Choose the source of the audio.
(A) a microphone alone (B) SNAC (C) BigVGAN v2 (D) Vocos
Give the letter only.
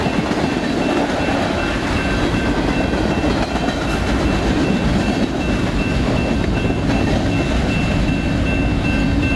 A